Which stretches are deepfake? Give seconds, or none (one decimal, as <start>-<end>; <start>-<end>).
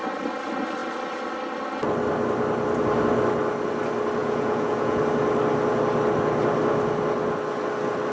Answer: 4.2-5.0